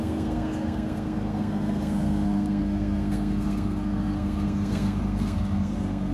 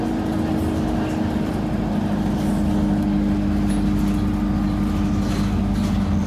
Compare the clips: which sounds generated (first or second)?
first